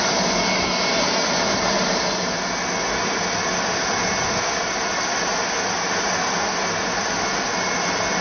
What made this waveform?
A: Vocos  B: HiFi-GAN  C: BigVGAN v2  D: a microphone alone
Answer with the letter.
D